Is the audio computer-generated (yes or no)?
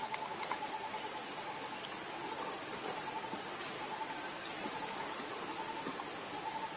no